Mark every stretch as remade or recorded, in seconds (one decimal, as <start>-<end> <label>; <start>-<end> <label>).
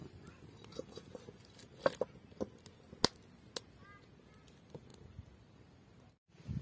0.0-6.6 recorded